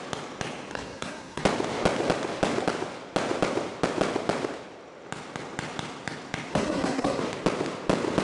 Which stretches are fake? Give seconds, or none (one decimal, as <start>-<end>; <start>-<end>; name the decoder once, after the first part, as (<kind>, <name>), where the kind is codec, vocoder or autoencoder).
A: 0.7-1.4 (codec, SNAC); 6.5-7.2